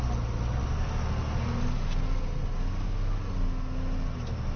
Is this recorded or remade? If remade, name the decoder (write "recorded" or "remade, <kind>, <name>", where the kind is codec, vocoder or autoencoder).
recorded